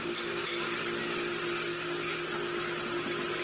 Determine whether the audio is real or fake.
real